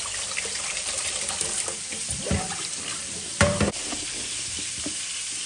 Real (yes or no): no